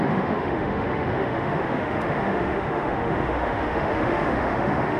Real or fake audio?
fake